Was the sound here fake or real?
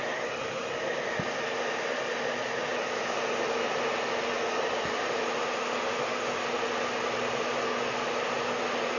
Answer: real